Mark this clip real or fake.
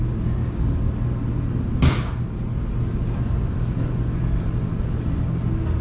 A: real